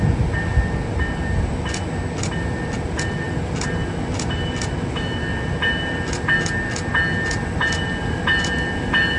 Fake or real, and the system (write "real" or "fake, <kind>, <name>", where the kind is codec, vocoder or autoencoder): real